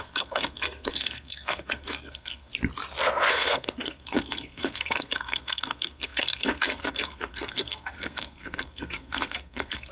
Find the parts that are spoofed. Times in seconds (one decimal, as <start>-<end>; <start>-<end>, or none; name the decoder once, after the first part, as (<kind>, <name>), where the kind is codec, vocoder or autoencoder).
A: 0.0-2.5 (codec, SNAC); 3.3-9.9